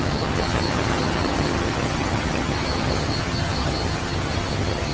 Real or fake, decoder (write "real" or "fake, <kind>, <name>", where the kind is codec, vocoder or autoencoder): fake, vocoder, HiFi-GAN